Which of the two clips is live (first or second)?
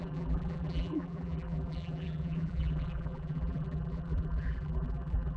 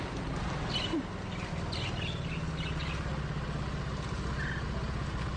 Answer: second